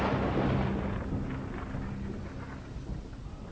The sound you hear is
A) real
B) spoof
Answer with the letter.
A